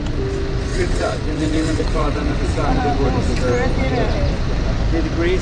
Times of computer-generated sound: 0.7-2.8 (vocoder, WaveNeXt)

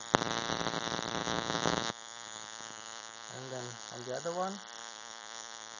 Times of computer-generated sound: 1.2-3.9 (autoencoder, DAC-VAE); 4.8-5.8

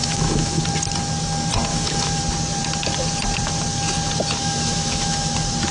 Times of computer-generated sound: 0.0-0.6 (autoencoder, DAC-VAE); 1.7-2.2; 4.4-5.3

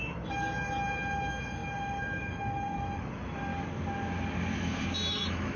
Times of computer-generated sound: 0.0-3.5 (autoencoder, DAC-VAE); 5.1-5.6

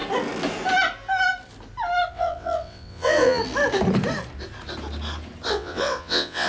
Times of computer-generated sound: 2.1-3.4 (vocoder, WaveNeXt); 5.5-6.5